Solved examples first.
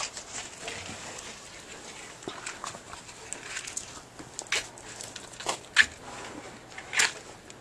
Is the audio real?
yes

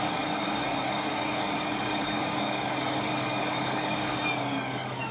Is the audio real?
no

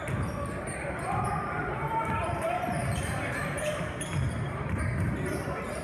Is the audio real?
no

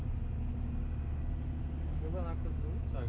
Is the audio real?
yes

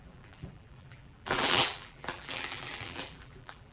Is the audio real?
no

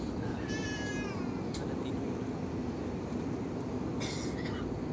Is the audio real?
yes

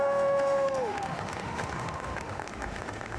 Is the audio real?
no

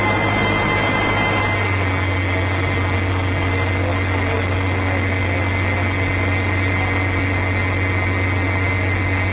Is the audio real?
yes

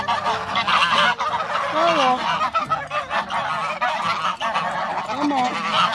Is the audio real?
yes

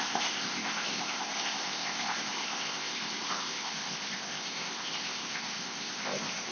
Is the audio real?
no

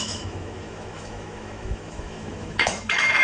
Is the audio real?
no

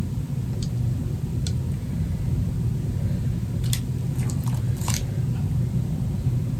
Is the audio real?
yes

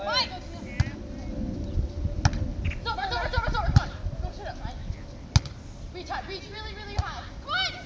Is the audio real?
yes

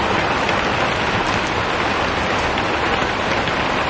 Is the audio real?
yes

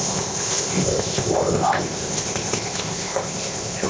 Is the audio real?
no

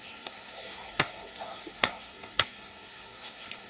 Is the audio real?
no